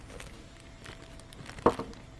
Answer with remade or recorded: recorded